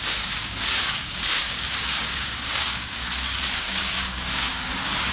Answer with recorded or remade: remade